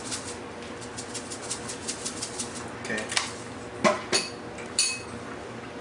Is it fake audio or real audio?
real